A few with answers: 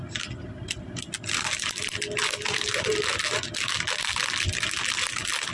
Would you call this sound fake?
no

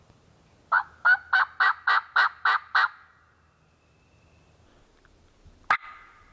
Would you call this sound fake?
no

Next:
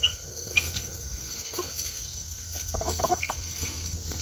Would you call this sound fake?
yes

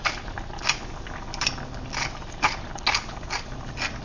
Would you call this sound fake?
no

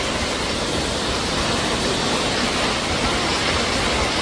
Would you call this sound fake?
no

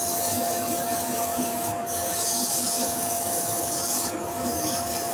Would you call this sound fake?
yes